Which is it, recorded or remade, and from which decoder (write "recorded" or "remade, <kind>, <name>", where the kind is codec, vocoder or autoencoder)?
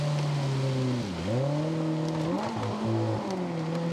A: recorded